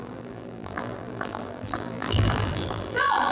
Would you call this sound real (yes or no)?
no